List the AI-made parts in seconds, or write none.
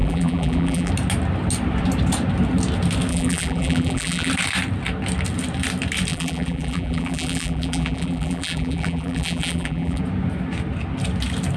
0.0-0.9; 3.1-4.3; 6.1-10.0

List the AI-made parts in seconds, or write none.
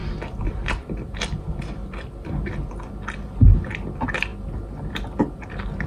0.0-3.3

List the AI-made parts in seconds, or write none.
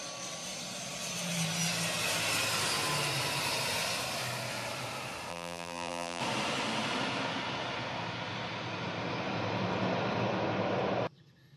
5.3-6.2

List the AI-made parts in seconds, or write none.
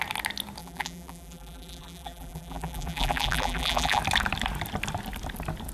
0.6-4.0